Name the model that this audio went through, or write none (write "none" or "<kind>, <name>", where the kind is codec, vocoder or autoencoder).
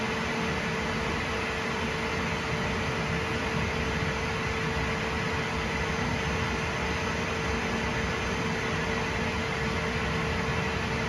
none